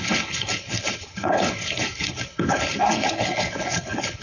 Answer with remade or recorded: remade